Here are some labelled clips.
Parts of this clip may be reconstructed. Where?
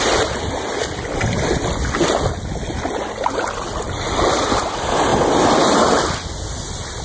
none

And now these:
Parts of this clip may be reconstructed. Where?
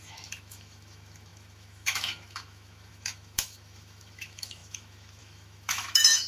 0.0-6.3 (autoencoder, DAC-VAE)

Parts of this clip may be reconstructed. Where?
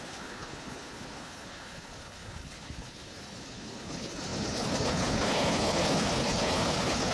0.0-7.1 (codec, HILCodec)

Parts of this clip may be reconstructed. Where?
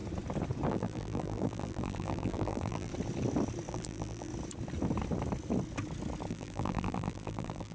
0.7-2.9 (vocoder, BigVGAN v2); 3.7-4.3; 6.3-7.7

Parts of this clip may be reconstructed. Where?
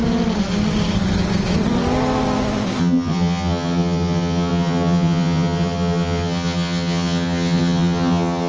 2.8-8.5 (vocoder, HiFi-GAN)